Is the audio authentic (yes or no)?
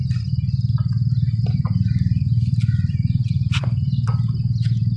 yes